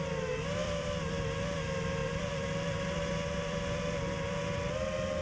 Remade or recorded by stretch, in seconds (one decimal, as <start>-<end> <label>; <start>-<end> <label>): 0.0-0.6 recorded; 0.6-1.1 remade; 1.1-2.0 recorded; 2.0-3.8 remade; 3.8-5.2 recorded